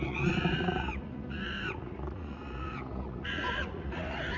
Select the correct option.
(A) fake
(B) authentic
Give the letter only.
A